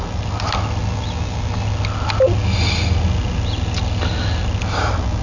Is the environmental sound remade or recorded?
recorded